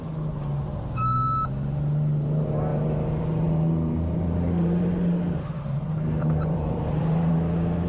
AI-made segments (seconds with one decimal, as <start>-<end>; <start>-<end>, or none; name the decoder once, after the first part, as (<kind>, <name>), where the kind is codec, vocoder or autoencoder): 2.7-7.3 (vocoder, BigVGAN v2)